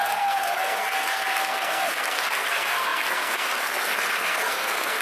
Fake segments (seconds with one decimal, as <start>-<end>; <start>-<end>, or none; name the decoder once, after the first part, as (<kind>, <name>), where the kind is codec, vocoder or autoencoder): 0.0-5.0 (codec, SNAC)